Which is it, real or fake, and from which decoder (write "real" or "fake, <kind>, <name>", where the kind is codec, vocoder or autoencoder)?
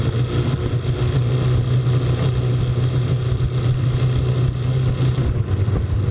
real